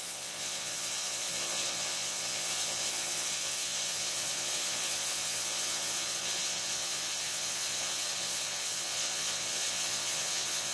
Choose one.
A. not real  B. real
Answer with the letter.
A